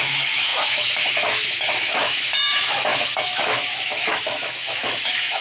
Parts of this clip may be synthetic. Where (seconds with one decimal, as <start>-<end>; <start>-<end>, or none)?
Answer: 0.0-5.4

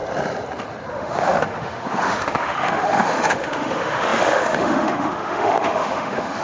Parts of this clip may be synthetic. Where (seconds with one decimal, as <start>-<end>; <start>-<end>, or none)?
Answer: 0.9-6.4

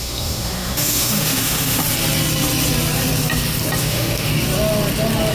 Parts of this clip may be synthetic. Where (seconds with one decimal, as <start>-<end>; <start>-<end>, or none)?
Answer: 0.0-1.8; 3.8-4.3

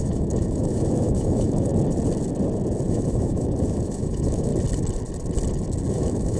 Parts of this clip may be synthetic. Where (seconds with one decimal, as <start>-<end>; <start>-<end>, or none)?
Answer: 0.0-1.7; 2.9-4.5; 5.9-6.4

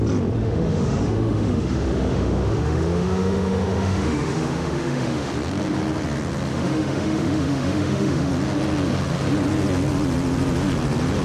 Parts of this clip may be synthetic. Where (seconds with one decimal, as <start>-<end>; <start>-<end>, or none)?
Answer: 0.4-5.3; 6.5-8.3

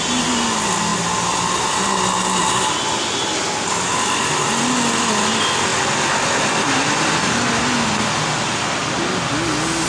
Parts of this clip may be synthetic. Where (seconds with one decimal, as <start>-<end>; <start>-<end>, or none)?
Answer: none

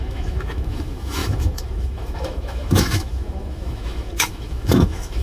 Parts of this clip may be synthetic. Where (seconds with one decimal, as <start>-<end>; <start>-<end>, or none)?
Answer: 0.0-5.2

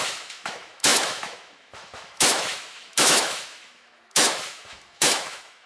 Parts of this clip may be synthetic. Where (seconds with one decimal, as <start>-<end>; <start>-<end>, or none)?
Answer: 0.0-5.7